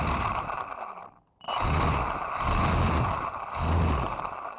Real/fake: real